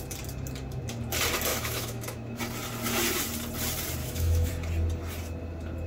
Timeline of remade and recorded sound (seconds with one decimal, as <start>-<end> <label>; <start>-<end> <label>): 0.0-1.5 recorded; 1.5-2.4 remade; 2.4-4.0 recorded; 4.0-4.5 remade; 4.5-5.9 recorded